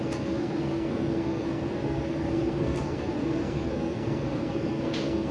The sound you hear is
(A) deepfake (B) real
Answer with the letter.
A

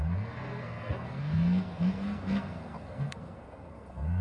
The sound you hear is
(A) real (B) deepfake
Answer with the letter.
B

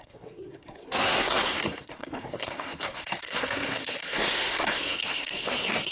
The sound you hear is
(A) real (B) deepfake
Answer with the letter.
B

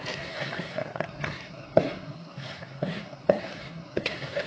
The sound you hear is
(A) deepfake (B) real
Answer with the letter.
A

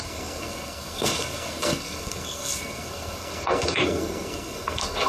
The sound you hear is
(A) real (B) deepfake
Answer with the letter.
B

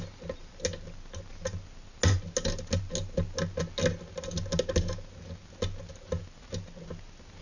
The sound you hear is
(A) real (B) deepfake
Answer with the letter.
A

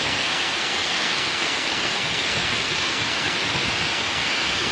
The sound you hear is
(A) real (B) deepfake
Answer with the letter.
B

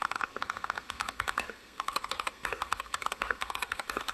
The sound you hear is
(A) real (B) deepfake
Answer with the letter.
B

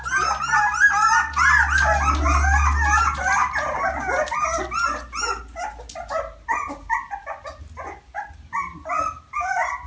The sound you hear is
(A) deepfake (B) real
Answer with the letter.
B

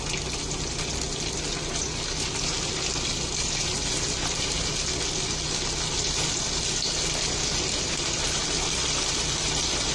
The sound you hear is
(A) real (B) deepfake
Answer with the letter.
A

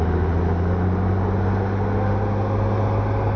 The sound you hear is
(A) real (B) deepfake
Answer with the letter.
A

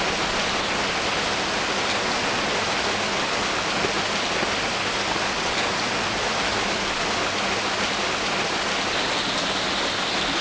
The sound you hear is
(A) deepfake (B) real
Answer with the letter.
B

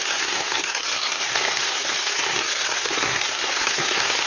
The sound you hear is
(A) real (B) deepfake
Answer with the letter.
B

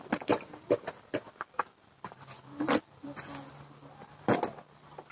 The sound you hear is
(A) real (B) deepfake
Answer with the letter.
A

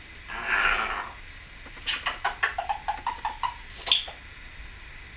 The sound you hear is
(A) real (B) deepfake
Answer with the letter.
A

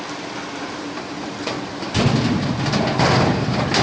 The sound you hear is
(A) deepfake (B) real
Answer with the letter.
B